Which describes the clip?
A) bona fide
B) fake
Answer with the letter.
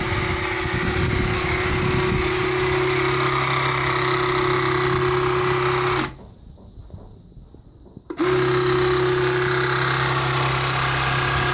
A